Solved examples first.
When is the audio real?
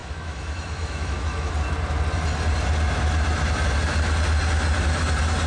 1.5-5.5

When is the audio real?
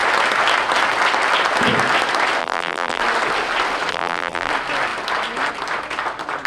0.0-2.4; 3.0-3.9; 4.5-6.5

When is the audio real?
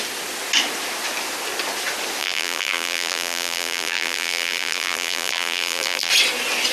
0.0-2.2; 6.1-6.7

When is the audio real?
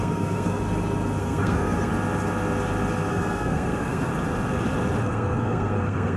0.6-1.2; 1.9-3.1; 4.1-5.0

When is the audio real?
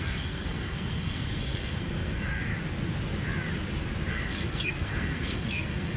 2.5-4.1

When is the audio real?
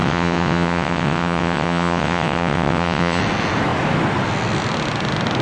3.2-5.4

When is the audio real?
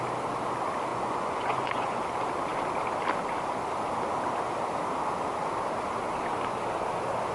0.0-0.9; 2.0-7.3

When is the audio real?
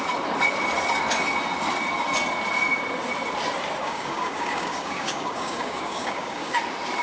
0.0-3.8; 6.6-7.0